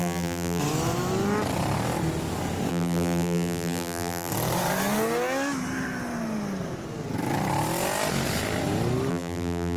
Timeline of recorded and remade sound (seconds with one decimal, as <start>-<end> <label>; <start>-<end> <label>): 0.0-0.6 remade; 0.6-2.7 recorded; 2.7-4.3 remade; 4.3-9.1 recorded; 9.1-9.8 remade